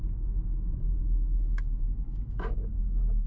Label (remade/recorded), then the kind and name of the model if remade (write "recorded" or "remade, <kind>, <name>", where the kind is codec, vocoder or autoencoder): remade, autoencoder, DAC-VAE